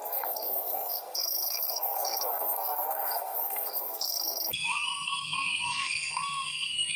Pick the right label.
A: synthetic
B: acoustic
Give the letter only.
A